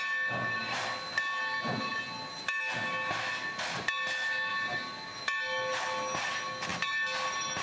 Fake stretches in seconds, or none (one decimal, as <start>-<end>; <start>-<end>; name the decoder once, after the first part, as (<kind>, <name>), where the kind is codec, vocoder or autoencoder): none